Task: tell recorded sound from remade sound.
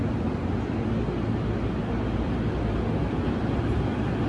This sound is recorded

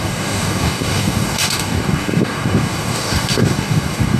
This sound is remade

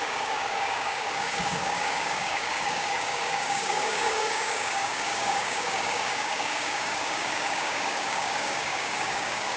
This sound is remade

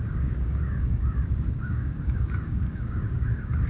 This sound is remade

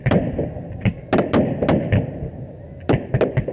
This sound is recorded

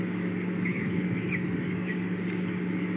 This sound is remade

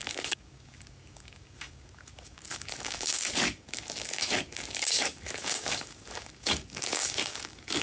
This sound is remade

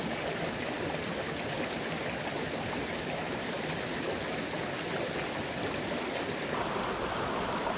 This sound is recorded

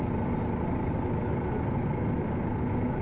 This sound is recorded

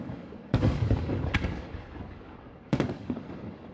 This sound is remade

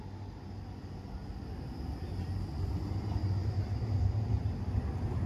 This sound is recorded